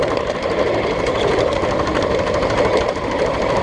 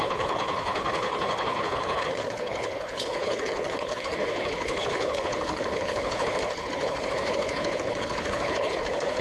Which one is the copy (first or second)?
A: second